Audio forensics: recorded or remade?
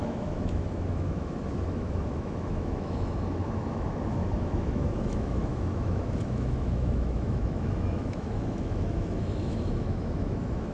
remade